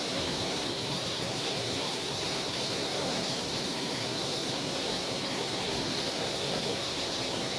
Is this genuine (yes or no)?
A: no